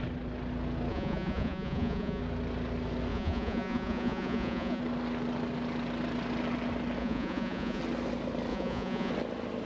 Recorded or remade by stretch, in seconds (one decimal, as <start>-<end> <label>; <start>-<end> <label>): 0.0-0.9 recorded; 0.9-2.2 remade; 2.2-3.1 recorded; 3.1-4.8 remade; 4.8-7.0 recorded; 7.0-7.8 remade; 7.8-8.5 recorded; 8.5-9.1 remade; 9.1-9.7 recorded